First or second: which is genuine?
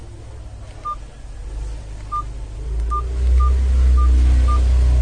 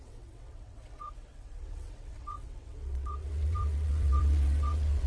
first